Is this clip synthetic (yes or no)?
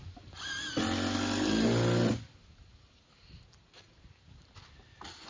no